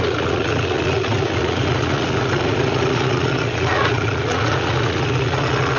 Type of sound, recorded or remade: remade